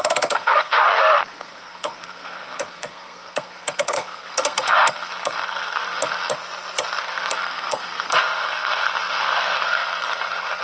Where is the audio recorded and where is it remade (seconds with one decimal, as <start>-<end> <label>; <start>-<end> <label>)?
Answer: 0.0-6.4 remade; 6.4-7.0 recorded; 7.0-10.6 remade